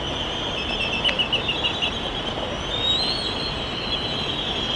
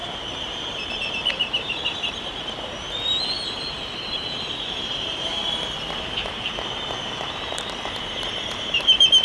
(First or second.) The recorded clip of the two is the first